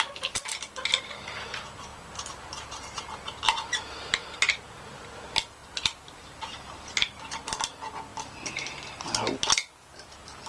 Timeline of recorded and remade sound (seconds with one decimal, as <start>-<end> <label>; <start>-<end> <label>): 0.0-1.9 recorded; 1.9-5.0 remade; 5.0-5.6 recorded; 5.6-7.3 remade; 7.3-10.5 recorded